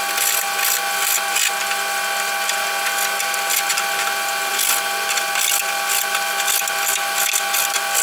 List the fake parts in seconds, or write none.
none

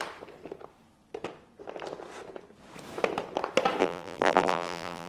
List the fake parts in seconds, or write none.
3.8-5.1 (vocoder, BigVGAN v2)

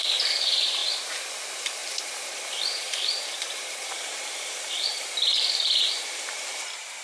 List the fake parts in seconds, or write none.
0.0-7.0 (vocoder, BigVGAN v2)

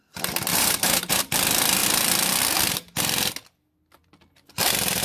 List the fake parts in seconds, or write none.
0.5-1.2 (vocoder, BigVGAN v2)

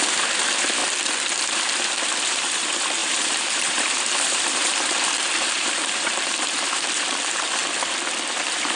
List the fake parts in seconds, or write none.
0.0-0.8 (vocoder, BigVGAN v2); 1.7-7.6; 8.3-8.8